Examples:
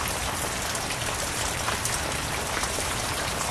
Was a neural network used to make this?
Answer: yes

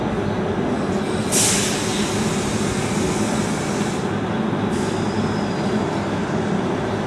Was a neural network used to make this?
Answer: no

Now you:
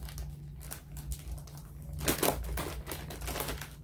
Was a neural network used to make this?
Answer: no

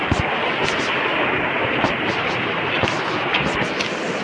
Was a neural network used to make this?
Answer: no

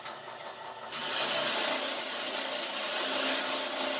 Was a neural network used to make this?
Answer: no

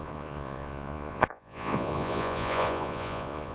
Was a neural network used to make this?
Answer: yes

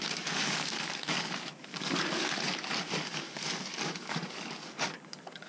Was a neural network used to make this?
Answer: yes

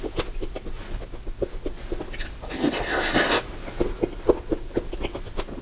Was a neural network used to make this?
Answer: no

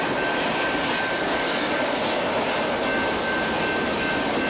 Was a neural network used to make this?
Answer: no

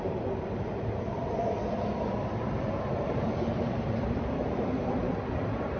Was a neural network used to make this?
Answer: yes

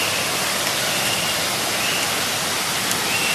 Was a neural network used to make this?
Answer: no